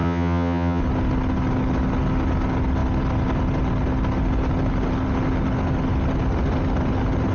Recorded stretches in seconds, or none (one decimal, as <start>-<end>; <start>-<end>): 0.8-7.3